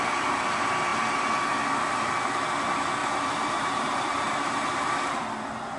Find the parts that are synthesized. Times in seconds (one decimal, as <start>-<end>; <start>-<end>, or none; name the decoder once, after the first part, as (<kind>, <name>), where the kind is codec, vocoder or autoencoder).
3.0-5.2 (vocoder, BigVGAN v2)